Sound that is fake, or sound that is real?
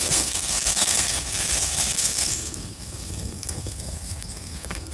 fake